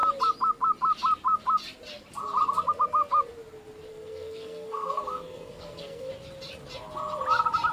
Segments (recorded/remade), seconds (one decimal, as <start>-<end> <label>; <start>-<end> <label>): 0.0-3.9 recorded; 3.9-6.1 remade; 6.1-7.7 recorded

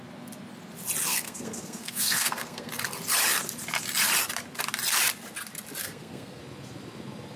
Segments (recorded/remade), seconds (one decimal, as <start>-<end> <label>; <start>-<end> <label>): 0.0-1.0 recorded; 1.0-2.7 remade; 2.7-5.8 recorded; 5.8-6.4 remade; 6.4-7.4 recorded